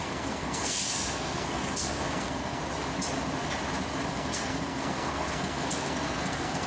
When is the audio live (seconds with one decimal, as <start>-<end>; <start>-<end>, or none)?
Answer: 2.6-4.1